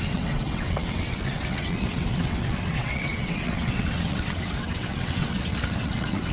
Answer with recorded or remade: remade